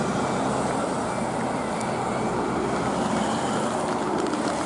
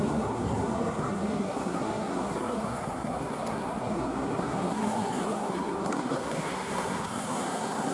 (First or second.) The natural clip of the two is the first